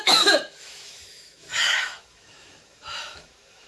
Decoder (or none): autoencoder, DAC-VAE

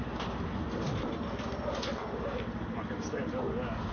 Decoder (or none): none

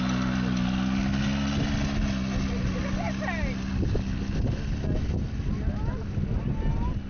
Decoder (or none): none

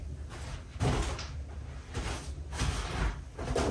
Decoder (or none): none